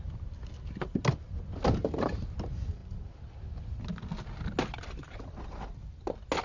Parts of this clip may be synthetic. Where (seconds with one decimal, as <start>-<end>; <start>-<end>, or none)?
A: none